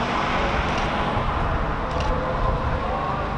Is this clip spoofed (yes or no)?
no